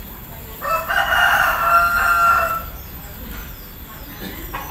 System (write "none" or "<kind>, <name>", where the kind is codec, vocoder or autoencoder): none